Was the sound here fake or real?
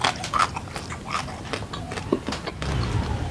real